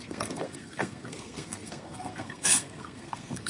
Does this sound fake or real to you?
fake